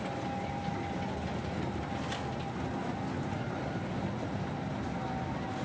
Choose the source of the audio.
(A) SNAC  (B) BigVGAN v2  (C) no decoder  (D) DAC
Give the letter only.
C